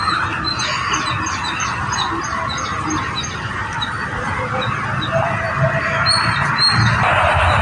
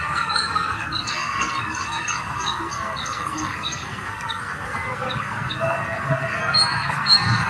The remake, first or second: second